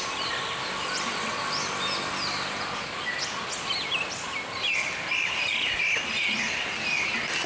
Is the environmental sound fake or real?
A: real